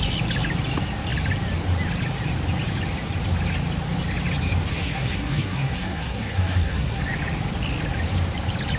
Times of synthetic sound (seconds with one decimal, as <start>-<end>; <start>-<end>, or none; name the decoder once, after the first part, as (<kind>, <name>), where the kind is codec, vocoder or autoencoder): 4.7-7.0 (codec, SNAC)